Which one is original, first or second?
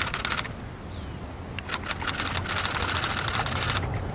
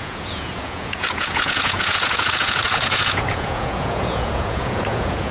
first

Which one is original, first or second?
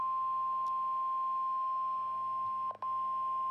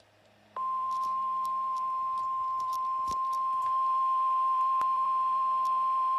first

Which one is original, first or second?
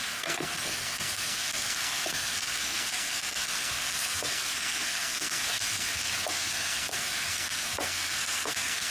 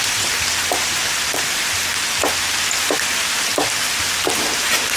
second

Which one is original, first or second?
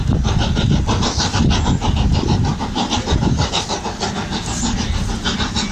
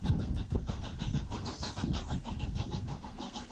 first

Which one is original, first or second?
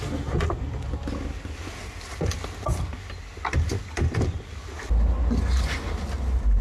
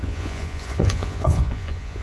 first